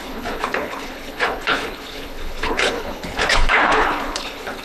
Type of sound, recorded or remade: remade